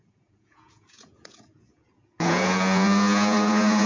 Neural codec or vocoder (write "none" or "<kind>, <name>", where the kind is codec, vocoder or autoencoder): vocoder, Vocos